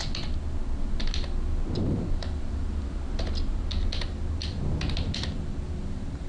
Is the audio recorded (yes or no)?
yes